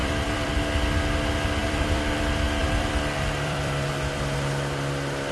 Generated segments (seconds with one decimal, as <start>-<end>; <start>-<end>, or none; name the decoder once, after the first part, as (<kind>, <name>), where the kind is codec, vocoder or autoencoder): 0.0-0.6 (vocoder, BigVGAN v2); 1.6-2.2; 2.6-3.9